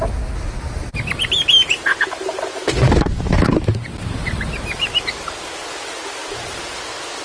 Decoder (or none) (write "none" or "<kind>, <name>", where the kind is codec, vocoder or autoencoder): none